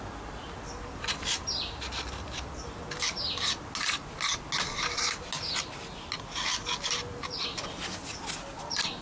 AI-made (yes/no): no